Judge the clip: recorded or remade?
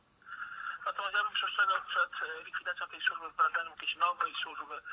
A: remade